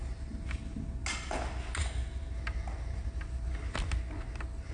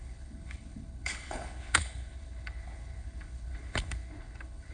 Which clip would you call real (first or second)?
first